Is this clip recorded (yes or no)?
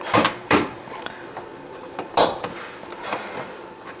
no